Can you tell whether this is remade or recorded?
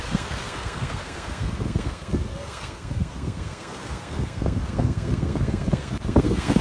remade